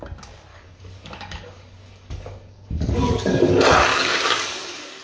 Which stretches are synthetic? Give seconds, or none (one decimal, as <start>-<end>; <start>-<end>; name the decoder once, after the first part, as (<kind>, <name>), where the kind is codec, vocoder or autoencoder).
0.5-3.5 (codec, DAC); 3.9-5.0